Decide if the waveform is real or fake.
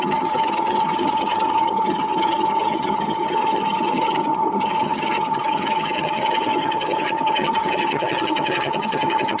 fake